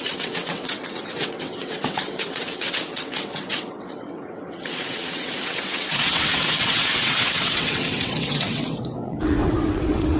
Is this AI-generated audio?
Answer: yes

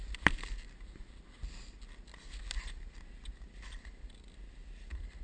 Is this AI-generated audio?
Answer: no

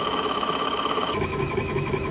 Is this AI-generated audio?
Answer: yes